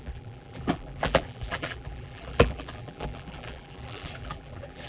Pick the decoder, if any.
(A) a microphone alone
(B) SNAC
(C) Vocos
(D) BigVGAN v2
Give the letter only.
D